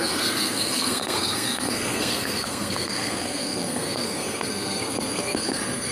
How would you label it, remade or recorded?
remade